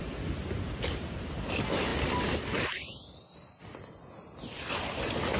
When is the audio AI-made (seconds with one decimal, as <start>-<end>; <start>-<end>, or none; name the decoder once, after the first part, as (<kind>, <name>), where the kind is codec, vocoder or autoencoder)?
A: none